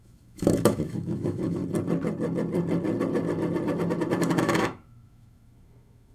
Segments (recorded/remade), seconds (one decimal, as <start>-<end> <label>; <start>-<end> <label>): 0.0-1.6 remade; 1.6-4.4 recorded; 4.4-6.1 remade